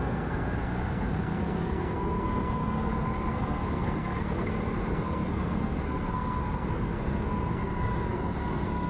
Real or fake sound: fake